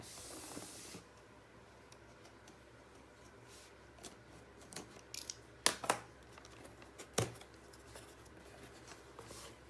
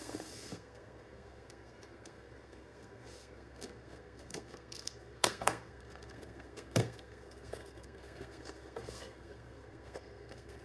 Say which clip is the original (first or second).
first